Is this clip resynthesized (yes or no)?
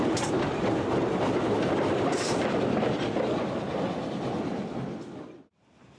no